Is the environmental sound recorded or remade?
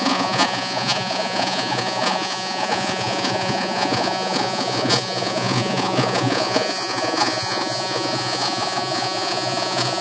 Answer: remade